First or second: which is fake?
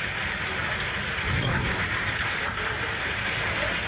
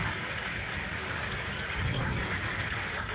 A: second